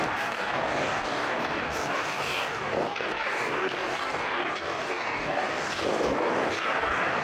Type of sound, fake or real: fake